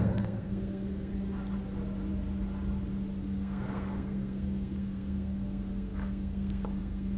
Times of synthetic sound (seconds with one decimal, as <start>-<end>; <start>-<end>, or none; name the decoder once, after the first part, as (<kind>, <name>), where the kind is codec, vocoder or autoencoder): 0.0-1.1 (codec, SNAC); 3.2-7.2